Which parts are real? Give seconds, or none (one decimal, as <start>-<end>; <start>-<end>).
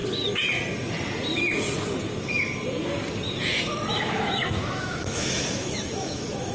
0.0-3.9